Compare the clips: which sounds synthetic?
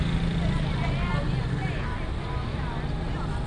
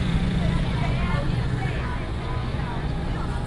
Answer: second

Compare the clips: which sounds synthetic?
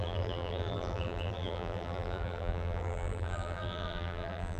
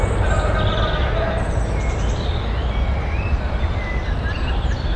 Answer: first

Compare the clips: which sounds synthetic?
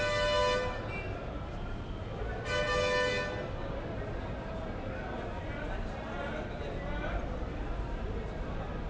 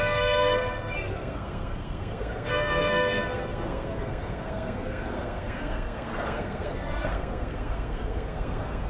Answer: second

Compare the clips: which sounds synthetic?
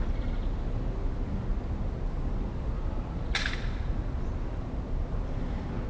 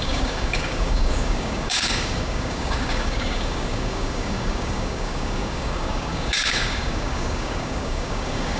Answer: second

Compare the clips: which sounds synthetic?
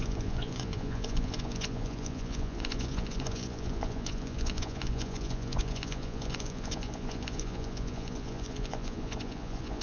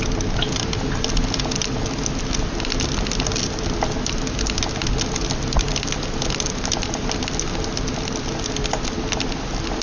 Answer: first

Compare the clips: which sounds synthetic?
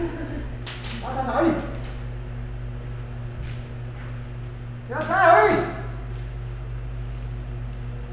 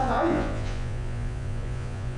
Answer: second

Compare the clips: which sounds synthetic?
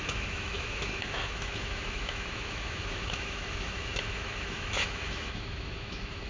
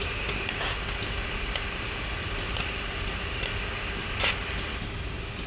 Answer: first